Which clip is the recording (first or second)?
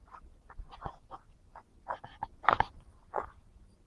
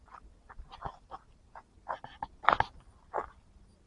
second